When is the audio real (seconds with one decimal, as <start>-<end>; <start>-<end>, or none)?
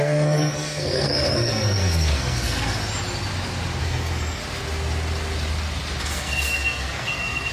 2.8-3.8; 4.4-6.0